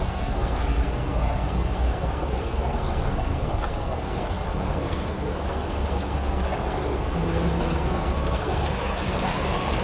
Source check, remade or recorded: remade